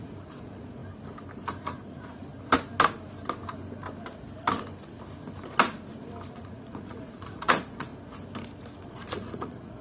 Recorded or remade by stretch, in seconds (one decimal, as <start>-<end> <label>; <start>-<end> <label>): 0.0-0.8 remade; 0.8-1.6 recorded; 1.6-2.2 remade; 2.2-6.3 recorded; 6.3-7.9 remade; 7.9-8.9 recorded; 8.9-9.8 remade